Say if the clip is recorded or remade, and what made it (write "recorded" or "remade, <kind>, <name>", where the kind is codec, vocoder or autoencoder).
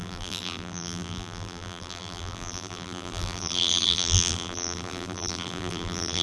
remade, vocoder, BigVGAN v2